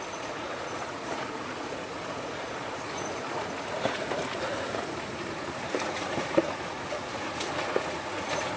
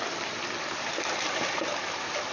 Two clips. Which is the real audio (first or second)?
second